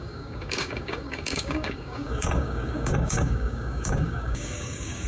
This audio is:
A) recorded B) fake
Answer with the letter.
B